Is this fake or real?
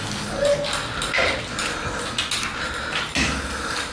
real